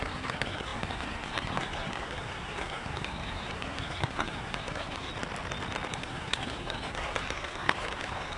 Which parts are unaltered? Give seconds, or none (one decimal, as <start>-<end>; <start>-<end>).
5.1-5.9